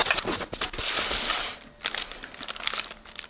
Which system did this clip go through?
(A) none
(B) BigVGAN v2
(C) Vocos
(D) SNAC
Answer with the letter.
A